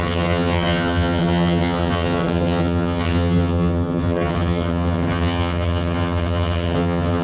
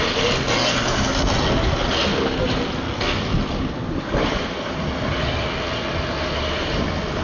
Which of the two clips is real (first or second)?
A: second